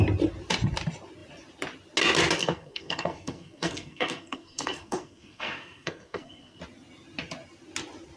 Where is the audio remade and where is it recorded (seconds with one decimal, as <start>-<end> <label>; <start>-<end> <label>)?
0.0-2.4 recorded; 2.4-6.6 remade; 6.6-8.2 recorded